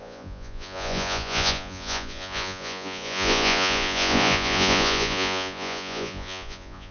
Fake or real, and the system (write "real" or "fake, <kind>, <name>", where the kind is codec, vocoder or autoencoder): fake, vocoder, Vocos